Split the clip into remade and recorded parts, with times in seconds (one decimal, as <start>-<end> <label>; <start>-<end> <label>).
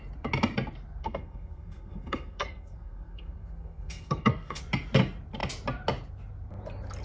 0.0-1.0 recorded; 1.0-4.6 remade; 4.6-7.0 recorded